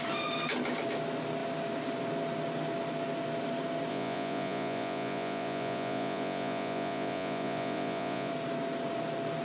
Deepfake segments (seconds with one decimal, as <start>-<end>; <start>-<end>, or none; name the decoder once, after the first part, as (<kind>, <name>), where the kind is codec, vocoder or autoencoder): 3.9-8.3 (vocoder, Vocos)